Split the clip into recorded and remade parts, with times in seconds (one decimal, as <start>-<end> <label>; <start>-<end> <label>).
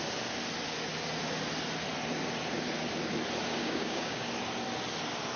0.0-3.6 recorded; 3.6-4.3 remade; 4.3-5.4 recorded